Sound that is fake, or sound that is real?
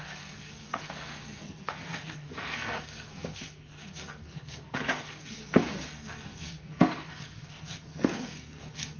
fake